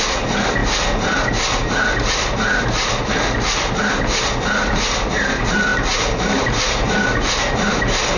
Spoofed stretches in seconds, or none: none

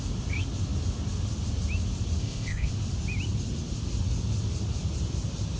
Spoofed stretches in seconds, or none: 2.2-2.7 (codec, ZipCodec)

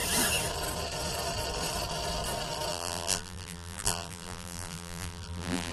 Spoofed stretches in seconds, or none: 2.7-5.7 (vocoder, BigVGAN v2)

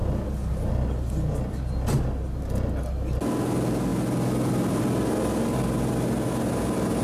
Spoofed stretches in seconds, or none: none

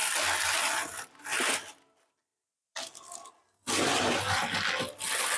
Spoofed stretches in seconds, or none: none

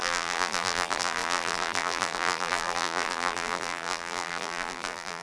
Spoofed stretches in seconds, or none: 0.0-5.2 (vocoder, BigVGAN v2)